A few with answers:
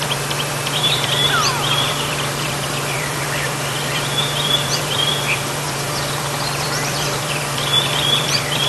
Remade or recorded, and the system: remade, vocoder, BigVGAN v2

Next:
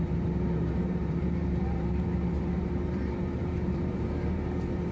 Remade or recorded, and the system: remade, vocoder, BigVGAN v2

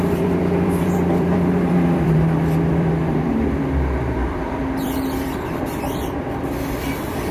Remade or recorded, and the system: remade, vocoder, BigVGAN v2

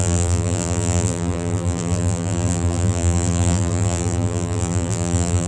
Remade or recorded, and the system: remade, vocoder, BigVGAN v2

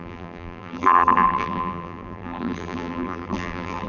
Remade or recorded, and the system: remade, vocoder, BigVGAN v2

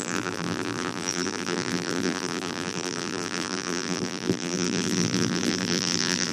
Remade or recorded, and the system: remade, vocoder, BigVGAN v2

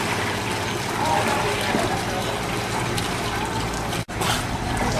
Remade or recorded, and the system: recorded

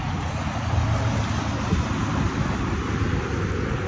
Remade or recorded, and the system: recorded